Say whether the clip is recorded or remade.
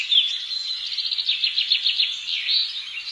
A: recorded